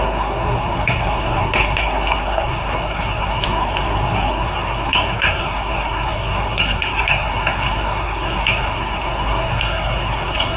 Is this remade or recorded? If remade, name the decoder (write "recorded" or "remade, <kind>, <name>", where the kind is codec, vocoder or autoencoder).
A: remade, codec, SNAC